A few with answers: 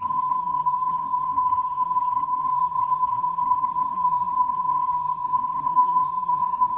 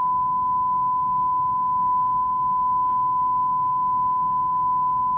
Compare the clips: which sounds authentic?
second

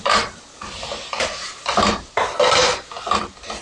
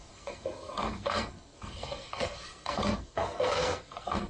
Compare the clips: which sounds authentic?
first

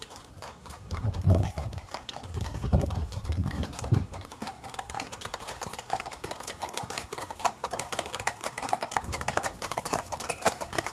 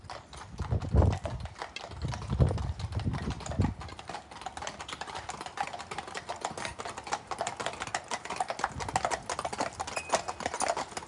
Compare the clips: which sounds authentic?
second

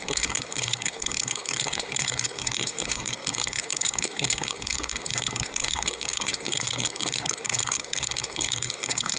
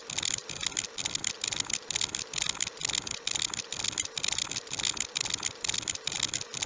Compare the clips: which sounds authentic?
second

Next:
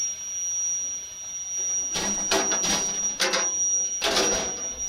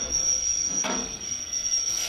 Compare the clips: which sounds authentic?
first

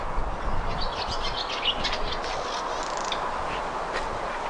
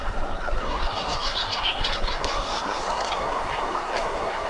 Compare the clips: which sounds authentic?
first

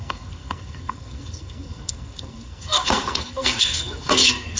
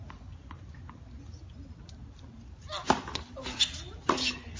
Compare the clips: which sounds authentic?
second